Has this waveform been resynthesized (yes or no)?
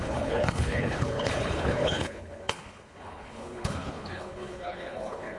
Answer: yes